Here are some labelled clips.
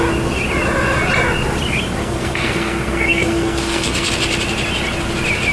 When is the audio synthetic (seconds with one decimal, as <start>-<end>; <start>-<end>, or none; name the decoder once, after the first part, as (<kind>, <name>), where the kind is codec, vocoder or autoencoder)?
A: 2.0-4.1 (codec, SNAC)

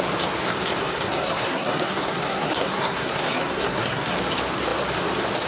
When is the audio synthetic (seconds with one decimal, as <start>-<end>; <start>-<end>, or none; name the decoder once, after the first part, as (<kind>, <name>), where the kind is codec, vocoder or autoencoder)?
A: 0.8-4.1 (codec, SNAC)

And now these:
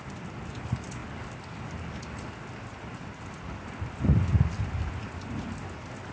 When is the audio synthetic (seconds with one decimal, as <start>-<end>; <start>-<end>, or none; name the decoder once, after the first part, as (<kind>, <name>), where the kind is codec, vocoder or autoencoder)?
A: none

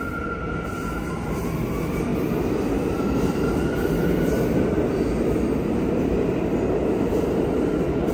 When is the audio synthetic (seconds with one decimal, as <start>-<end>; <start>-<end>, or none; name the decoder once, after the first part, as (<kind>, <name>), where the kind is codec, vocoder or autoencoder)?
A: none

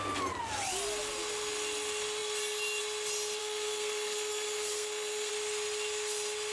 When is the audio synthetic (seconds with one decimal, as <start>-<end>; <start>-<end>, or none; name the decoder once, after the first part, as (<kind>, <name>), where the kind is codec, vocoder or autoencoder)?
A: 3.4-5.3 (codec, SNAC)

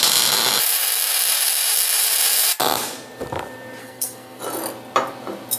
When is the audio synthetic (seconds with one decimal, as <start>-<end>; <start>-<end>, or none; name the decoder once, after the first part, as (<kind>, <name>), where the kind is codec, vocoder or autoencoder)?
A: 3.8-4.4 (codec, SNAC)

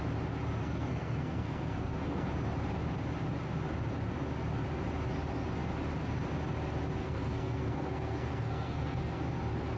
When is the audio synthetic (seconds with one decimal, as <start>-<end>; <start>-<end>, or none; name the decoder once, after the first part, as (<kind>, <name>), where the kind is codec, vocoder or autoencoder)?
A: 0.6-2.3 (codec, SNAC); 7.0-9.2